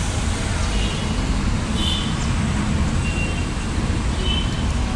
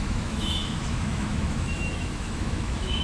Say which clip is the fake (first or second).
second